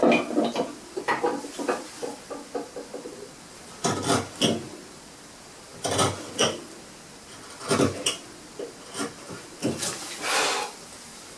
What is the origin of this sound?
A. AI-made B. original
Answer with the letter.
B